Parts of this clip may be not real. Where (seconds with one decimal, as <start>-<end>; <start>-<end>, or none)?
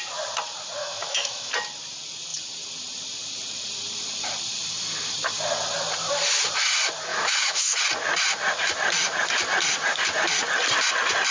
0.8-1.5; 7.1-7.8